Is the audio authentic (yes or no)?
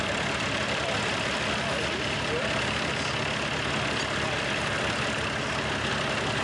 yes